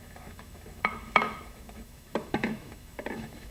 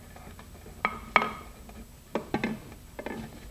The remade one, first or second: first